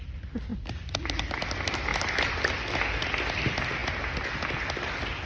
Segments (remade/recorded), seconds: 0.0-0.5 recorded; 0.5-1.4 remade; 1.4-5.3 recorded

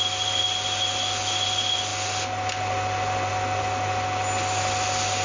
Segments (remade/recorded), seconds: 0.0-5.2 recorded

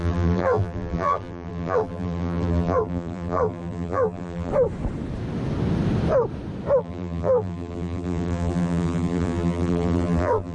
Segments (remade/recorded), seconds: 0.0-4.5 remade; 4.5-6.8 recorded; 6.8-10.5 remade